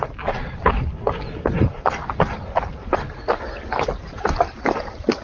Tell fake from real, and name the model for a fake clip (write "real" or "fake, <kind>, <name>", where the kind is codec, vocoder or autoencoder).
real